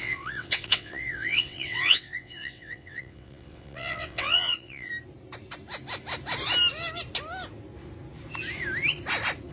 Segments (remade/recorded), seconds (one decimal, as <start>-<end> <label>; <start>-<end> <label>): 0.0-4.9 remade; 4.9-9.5 recorded